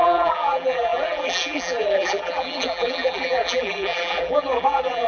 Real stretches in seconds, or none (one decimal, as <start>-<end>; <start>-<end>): none